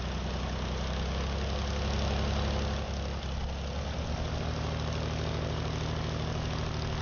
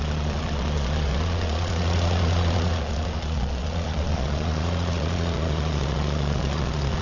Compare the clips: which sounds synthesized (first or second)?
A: second